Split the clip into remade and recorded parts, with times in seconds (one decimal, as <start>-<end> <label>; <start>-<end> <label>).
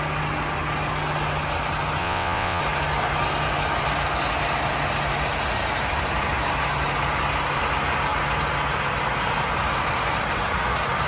0.0-2.0 recorded; 2.0-2.6 remade; 2.6-11.1 recorded